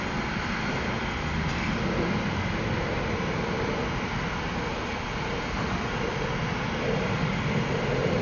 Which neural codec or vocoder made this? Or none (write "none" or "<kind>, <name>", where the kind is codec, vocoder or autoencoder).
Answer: none